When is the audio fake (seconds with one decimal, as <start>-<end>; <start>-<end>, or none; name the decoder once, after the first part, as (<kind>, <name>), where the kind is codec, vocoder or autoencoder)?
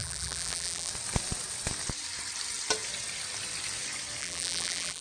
0.0-0.9 (vocoder, BigVGAN v2); 4.2-5.0